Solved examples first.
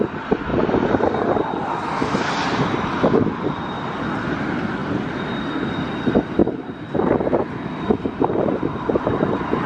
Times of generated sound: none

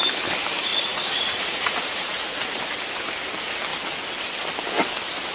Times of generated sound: 0.7-2.6 (vocoder, Vocos)

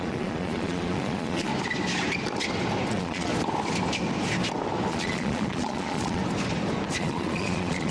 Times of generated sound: 0.0-1.5 (vocoder, Vocos); 2.9-3.3; 4.9-6.2; 7.0-7.9